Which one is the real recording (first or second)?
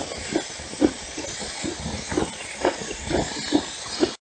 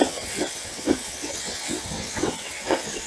first